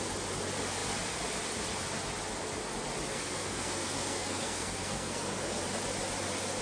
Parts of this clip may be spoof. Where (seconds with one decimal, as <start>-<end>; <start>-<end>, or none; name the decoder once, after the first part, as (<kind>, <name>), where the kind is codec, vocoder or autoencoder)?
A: 3.1-5.6 (codec, SNAC)